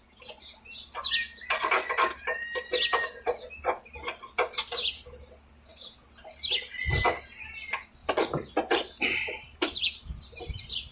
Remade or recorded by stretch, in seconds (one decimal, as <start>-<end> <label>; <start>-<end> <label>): 0.0-8.0 recorded; 8.0-10.9 remade